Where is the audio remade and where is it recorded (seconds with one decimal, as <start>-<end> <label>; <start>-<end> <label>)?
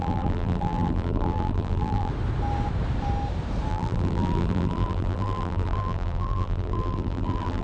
0.0-2.1 remade; 2.1-3.7 recorded; 3.7-7.6 remade